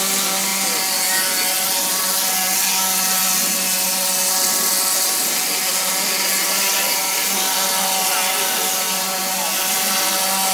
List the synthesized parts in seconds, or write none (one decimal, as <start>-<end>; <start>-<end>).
none